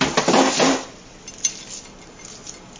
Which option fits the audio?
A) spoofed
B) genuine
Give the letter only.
B